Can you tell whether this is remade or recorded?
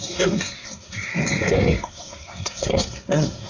remade